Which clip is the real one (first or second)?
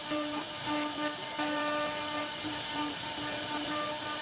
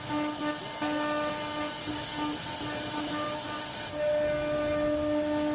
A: second